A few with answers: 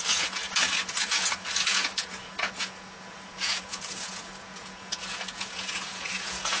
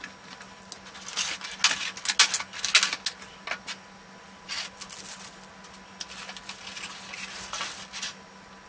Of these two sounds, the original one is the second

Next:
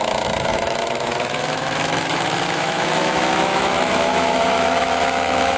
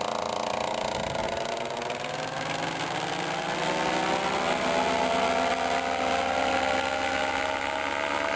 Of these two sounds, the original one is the second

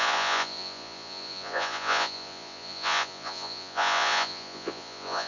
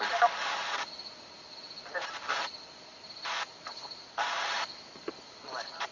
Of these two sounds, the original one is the second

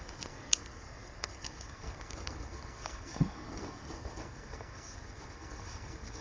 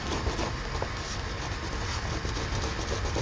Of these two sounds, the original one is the second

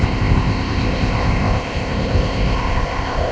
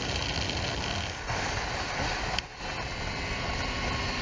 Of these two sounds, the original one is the second